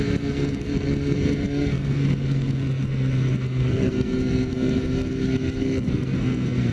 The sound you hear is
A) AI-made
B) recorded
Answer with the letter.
A